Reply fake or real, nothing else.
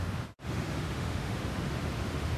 fake